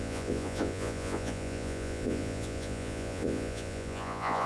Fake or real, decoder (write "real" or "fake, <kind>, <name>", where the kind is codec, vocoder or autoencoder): fake, vocoder, Vocos